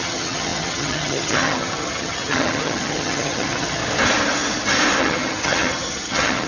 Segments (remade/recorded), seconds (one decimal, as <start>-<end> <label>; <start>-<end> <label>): 0.0-3.8 remade; 3.8-5.0 recorded; 5.0-6.5 remade